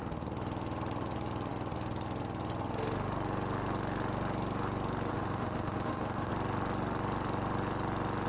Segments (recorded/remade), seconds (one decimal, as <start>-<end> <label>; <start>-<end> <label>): 0.0-5.1 recorded; 5.1-6.3 remade; 6.3-8.3 recorded